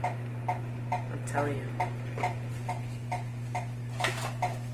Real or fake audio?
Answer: real